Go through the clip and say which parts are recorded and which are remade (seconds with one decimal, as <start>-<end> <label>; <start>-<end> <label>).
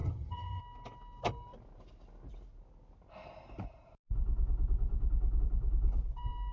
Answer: 0.0-0.6 remade; 0.6-6.5 recorded